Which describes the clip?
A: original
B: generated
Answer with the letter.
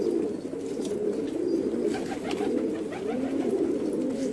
A